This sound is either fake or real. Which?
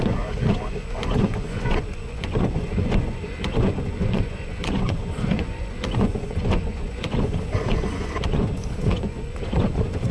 fake